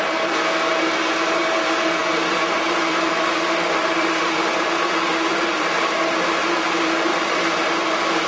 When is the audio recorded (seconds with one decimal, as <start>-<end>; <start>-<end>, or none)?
0.0-2.0; 5.9-7.1